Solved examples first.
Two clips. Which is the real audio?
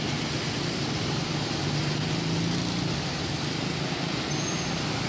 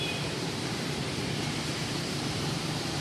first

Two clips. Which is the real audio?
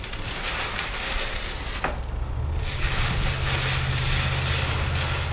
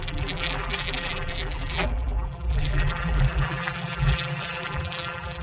first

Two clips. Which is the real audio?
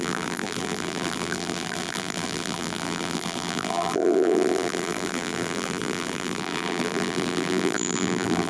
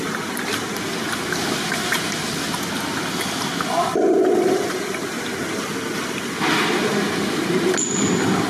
second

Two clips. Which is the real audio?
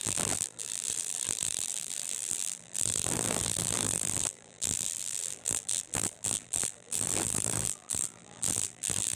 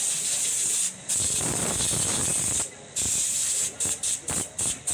second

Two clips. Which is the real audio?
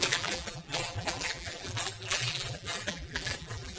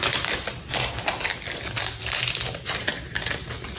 second